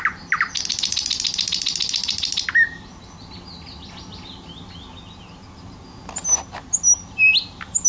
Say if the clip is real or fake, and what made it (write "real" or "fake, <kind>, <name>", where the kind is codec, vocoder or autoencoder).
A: real